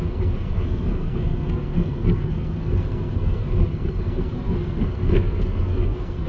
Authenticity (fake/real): fake